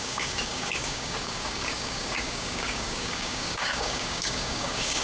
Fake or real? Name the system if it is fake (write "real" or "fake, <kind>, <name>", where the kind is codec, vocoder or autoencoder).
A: fake, codec, DAC